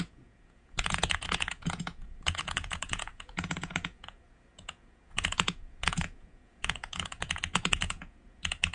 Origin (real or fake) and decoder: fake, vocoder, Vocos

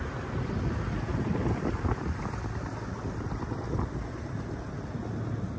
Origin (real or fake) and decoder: real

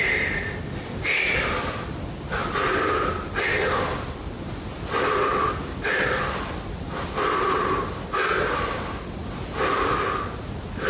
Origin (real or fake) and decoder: real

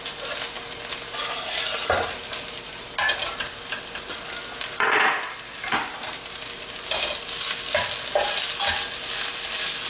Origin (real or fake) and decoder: real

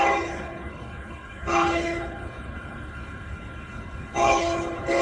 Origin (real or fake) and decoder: fake, codec, HILCodec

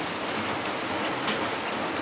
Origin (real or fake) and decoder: real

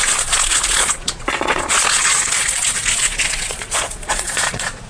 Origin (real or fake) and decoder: fake, vocoder, Vocos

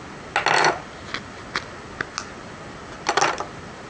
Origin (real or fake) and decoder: real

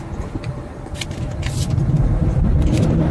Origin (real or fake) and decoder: fake, vocoder, BigVGAN v2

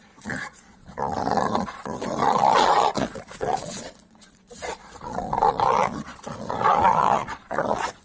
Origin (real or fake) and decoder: fake, vocoder, Vocos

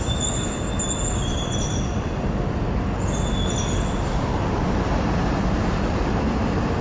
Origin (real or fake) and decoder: real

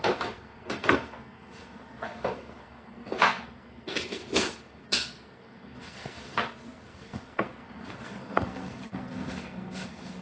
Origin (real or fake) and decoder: fake, codec, SNAC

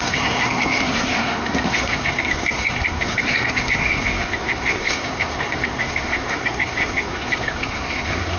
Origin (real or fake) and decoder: fake, codec, SNAC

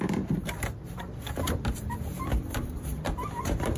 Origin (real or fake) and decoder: real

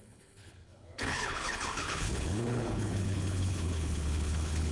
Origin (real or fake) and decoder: fake, codec, HILCodec